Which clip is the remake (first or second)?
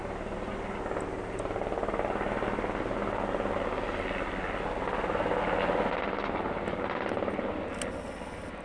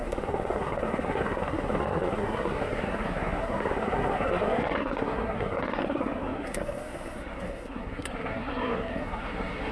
second